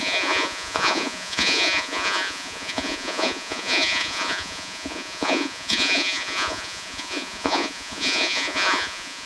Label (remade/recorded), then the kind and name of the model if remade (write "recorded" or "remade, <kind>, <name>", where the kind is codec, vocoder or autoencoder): remade, vocoder, Vocos